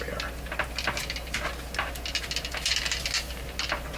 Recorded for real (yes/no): yes